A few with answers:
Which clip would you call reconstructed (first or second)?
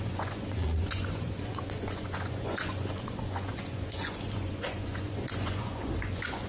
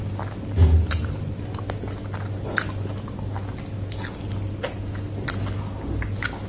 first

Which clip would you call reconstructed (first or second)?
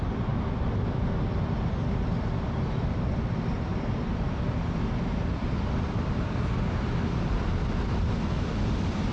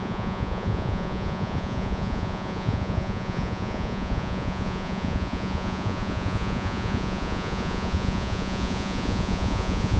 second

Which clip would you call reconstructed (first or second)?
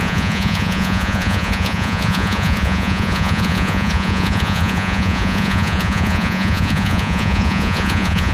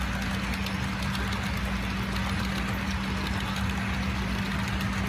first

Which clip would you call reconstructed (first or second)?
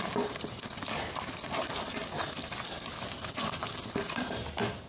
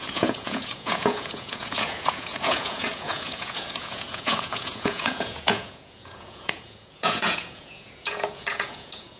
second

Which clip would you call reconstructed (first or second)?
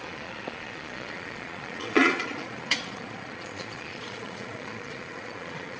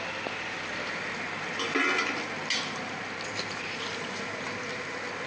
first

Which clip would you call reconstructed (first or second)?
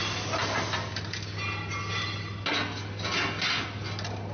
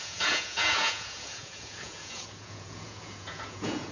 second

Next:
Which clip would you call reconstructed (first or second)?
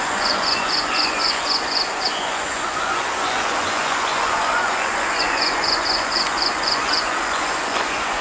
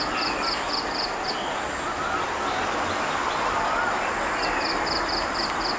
first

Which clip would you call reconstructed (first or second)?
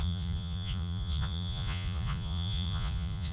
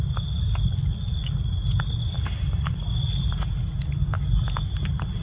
first